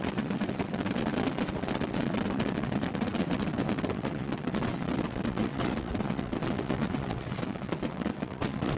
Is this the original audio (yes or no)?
no